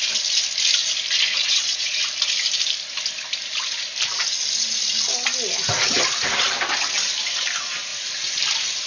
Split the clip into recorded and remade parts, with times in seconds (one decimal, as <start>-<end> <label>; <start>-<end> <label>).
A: 0.0-1.4 recorded; 1.4-2.0 remade; 2.0-8.9 recorded